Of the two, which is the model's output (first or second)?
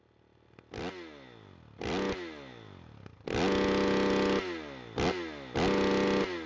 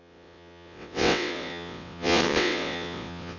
second